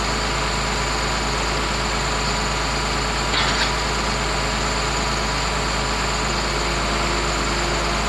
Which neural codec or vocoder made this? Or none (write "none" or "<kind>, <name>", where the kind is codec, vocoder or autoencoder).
none